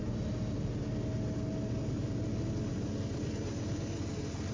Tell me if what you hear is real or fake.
real